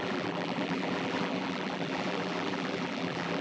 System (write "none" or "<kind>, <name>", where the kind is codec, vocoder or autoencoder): vocoder, BigVGAN v2